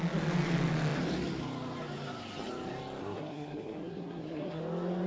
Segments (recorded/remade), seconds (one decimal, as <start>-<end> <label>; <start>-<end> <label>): 0.0-3.0 recorded; 3.0-4.6 remade; 4.6-5.1 recorded